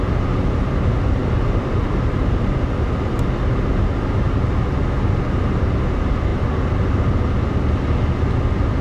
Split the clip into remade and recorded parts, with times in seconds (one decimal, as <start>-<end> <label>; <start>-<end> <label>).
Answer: 0.0-8.8 recorded

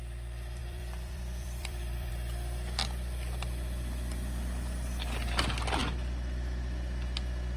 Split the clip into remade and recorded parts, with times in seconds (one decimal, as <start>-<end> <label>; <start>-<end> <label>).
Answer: 0.0-0.6 recorded; 0.6-2.1 remade; 2.1-7.6 recorded

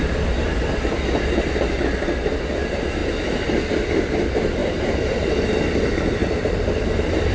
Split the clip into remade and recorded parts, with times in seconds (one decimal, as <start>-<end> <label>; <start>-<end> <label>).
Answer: 0.0-4.6 recorded; 4.6-5.3 remade; 5.3-6.2 recorded; 6.2-7.3 remade